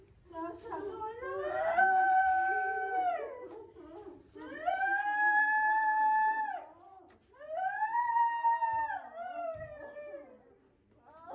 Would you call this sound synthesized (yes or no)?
no